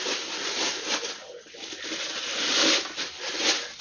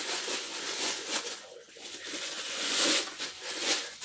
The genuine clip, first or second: first